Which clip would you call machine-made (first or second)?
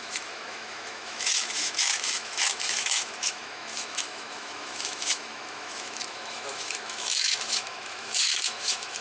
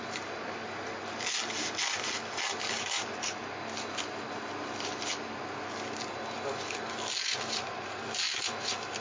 first